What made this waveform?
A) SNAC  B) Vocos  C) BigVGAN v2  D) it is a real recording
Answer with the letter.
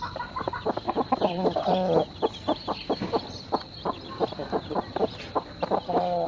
C